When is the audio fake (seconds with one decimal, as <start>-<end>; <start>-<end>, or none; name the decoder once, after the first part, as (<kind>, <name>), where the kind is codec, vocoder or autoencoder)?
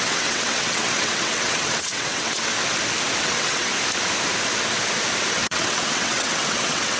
0.0-2.5 (vocoder, WaveNeXt); 3.2-3.7; 5.3-7.0